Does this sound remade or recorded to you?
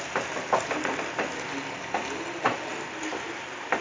recorded